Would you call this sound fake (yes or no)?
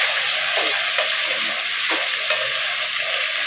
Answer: no